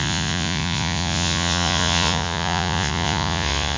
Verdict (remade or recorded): remade